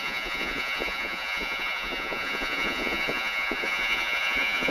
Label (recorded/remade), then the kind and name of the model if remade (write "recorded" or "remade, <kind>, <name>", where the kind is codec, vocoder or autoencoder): remade, vocoder, Vocos